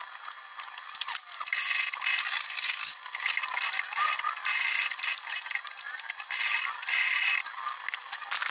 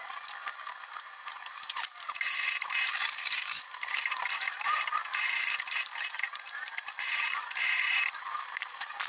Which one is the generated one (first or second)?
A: second